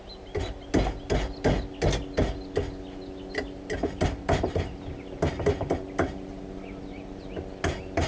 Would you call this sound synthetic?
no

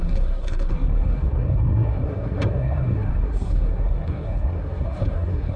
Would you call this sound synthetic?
yes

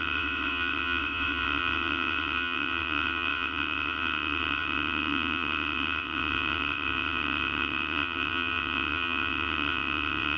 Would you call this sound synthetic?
yes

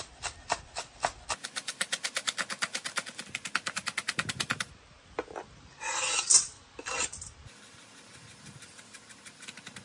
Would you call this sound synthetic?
no